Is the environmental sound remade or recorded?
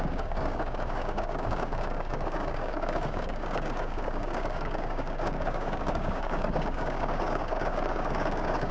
remade